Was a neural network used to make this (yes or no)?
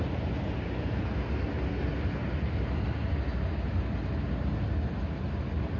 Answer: no